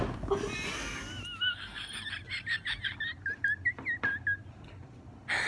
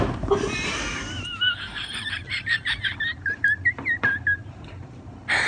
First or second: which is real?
first